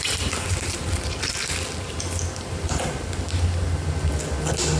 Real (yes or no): yes